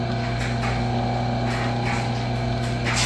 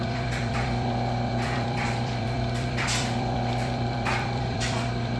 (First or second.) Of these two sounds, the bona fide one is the first